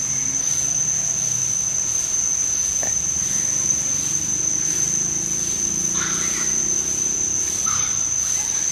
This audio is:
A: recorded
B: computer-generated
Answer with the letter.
A